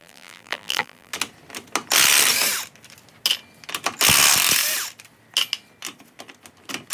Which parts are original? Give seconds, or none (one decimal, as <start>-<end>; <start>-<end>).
1.1-6.9